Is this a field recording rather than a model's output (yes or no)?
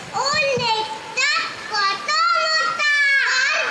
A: yes